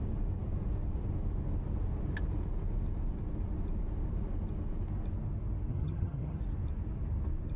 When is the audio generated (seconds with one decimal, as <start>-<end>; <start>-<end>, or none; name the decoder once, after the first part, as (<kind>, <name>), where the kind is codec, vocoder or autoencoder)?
5.7-6.4 (vocoder, HiFi-GAN)

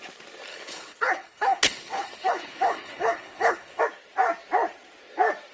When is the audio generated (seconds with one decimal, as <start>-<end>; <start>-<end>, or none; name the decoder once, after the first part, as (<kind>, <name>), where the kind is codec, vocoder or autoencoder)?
0.5-3.8 (codec, HILCodec)

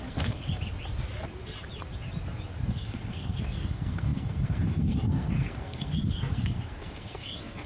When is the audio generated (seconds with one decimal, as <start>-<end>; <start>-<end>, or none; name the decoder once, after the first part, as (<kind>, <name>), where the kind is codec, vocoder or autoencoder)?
0.0-0.5 (codec, SNAC); 2.8-7.7

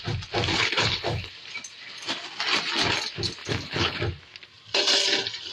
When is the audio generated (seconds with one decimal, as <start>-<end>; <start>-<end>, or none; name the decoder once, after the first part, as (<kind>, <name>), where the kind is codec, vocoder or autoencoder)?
0.5-1.3 (codec, HILCodec); 3.4-4.0

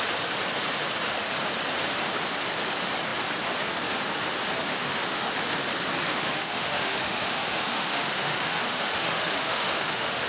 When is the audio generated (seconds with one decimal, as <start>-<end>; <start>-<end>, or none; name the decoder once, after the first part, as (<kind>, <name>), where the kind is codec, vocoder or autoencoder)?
4.7-5.3 (autoencoder, DAC-VAE); 6.1-10.3